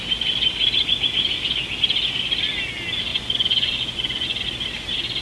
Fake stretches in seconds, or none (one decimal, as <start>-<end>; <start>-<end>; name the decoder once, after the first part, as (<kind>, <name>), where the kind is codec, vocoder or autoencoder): 3.1-4.4 (vocoder, Vocos)